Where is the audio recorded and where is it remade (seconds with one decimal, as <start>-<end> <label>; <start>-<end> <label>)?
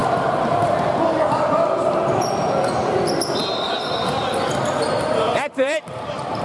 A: 0.0-1.1 remade; 1.1-3.4 recorded; 3.4-5.8 remade; 5.8-6.4 recorded